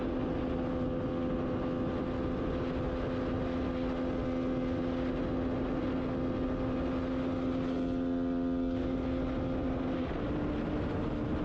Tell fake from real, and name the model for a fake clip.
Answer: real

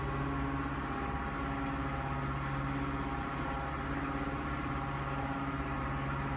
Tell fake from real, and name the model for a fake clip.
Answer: real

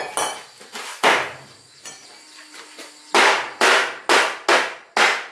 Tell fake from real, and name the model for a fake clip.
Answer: real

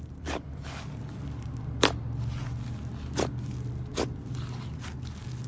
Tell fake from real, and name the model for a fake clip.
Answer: real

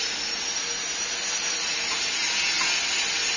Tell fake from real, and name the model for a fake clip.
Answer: real